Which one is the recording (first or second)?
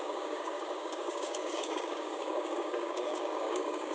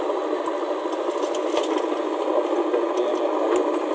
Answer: second